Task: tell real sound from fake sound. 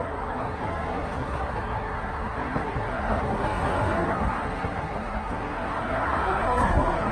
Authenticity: fake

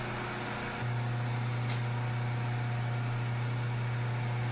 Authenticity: real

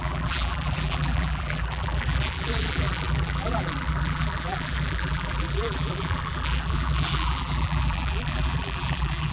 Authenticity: fake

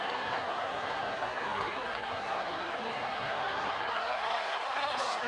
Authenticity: fake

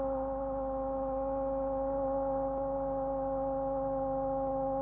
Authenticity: real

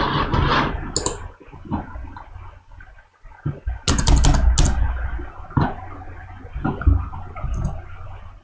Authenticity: real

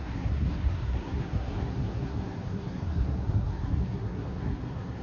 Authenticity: fake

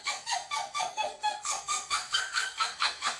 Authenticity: fake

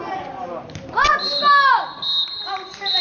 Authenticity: real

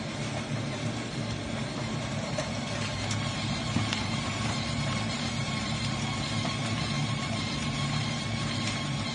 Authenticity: fake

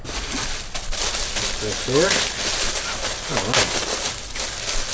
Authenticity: real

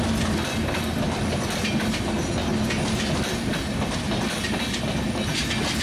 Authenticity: real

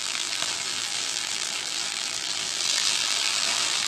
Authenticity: fake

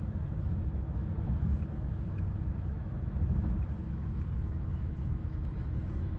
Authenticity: fake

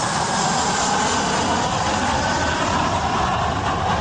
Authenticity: real